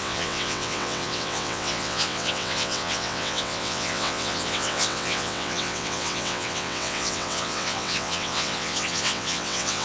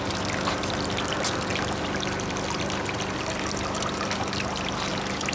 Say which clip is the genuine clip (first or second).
second